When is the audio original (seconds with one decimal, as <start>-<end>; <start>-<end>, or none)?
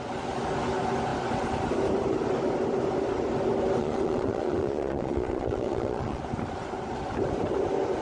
0.0-3.8; 6.2-8.0